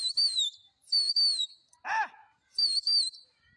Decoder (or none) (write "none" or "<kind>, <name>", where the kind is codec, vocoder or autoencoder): vocoder, BigVGAN v2